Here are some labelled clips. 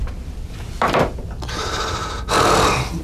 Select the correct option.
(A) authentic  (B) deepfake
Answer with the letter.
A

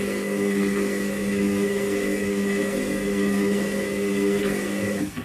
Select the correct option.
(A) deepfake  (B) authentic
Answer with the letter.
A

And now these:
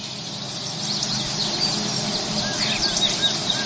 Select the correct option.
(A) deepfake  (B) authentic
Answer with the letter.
B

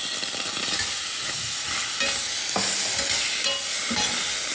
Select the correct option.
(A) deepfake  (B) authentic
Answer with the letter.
B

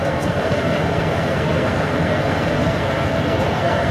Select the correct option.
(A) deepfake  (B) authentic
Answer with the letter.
A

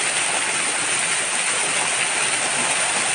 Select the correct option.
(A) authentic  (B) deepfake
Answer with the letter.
A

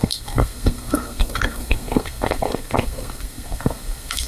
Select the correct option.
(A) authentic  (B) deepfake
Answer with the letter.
B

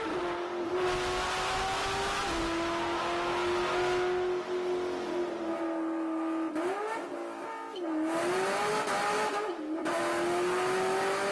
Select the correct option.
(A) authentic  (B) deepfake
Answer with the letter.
A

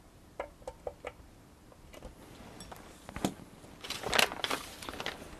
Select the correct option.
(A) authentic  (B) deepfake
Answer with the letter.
A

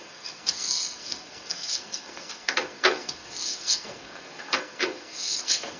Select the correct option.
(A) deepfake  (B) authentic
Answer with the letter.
A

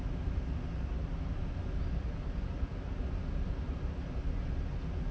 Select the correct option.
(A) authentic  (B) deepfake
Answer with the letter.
A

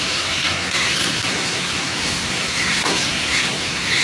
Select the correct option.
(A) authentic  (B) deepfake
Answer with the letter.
B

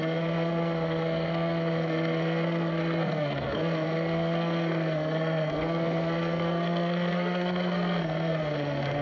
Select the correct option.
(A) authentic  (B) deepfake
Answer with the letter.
B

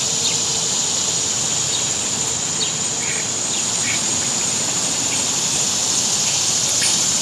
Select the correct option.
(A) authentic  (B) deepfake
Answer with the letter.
A